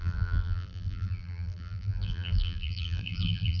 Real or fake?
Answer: fake